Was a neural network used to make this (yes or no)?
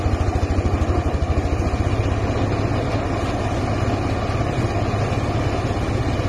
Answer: no